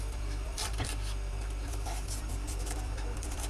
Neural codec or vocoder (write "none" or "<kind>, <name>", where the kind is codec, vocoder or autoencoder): vocoder, BigVGAN v2